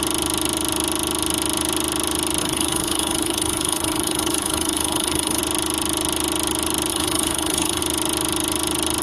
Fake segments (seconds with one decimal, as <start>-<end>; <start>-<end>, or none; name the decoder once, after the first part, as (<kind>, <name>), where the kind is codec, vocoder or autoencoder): 2.4-5.4 (codec, HILCodec); 6.9-7.8